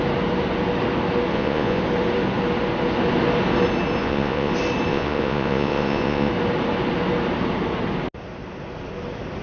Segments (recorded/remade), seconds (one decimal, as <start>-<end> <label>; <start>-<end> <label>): 0.0-1.3 recorded; 1.3-1.8 remade; 1.8-4.0 recorded; 4.0-4.5 remade; 4.5-4.9 recorded; 4.9-6.3 remade; 6.3-9.4 recorded